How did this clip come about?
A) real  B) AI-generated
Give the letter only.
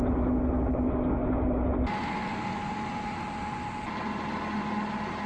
A